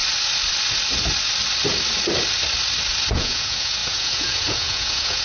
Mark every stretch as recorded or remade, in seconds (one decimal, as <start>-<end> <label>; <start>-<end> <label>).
0.0-3.1 recorded; 3.1-5.2 remade